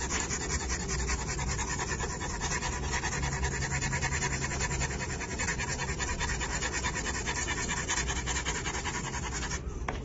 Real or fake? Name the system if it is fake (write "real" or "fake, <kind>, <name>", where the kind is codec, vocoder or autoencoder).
real